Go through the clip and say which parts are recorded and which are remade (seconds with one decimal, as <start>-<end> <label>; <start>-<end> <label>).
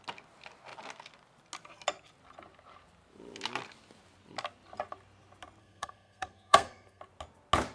0.0-5.6 recorded; 5.6-7.0 remade; 7.0-7.7 recorded